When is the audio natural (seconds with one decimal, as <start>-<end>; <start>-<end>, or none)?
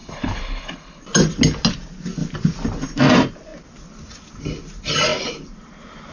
1.0-6.1